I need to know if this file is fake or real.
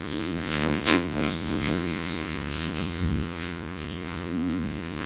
fake